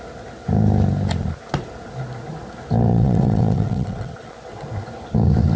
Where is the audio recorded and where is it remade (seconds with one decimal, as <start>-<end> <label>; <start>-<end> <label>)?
0.0-2.9 recorded; 2.9-4.3 remade; 4.3-5.6 recorded